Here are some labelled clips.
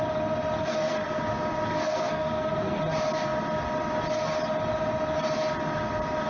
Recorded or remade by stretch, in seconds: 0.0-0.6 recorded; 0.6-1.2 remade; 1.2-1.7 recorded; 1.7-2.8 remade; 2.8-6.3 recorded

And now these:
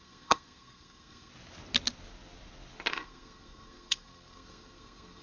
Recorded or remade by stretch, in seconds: 0.0-1.3 remade; 1.3-2.9 recorded; 2.9-5.2 remade

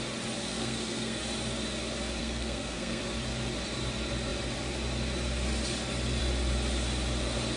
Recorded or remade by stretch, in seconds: 0.0-0.4 recorded; 0.4-1.2 remade; 1.2-2.2 recorded; 2.2-3.0 remade; 3.0-7.6 recorded

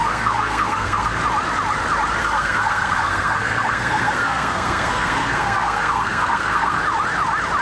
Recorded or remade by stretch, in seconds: 0.0-1.2 remade; 1.2-2.2 recorded; 2.2-6.8 remade; 6.8-7.6 recorded

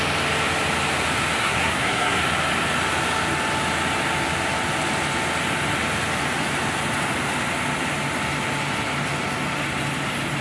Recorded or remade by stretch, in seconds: 0.0-1.4 recorded; 1.4-2.2 remade; 2.2-10.4 recorded

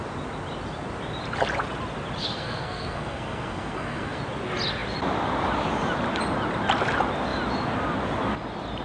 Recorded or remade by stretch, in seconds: 0.0-2.2 recorded; 2.2-4.2 remade; 4.2-8.8 recorded

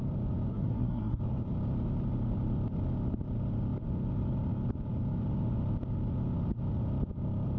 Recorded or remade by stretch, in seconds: 0.0-0.5 recorded; 0.5-1.2 remade; 1.2-7.6 recorded

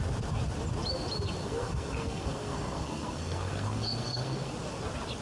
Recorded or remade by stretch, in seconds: 0.0-1.4 recorded; 1.4-4.5 remade; 4.5-5.2 recorded